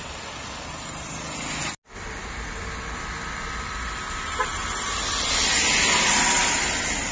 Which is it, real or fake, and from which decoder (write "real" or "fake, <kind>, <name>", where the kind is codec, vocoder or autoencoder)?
real